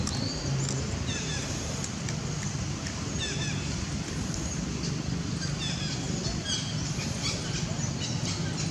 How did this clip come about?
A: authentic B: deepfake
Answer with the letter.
A